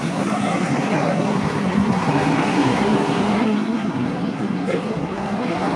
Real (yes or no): no